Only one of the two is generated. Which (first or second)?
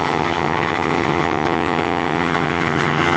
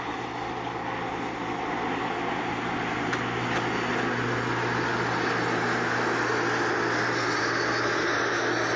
first